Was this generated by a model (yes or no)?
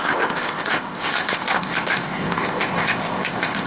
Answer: yes